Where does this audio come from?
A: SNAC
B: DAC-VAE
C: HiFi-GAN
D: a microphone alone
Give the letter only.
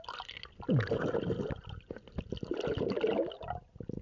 D